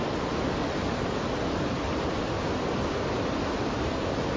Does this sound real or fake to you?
real